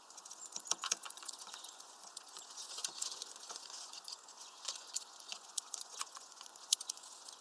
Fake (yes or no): yes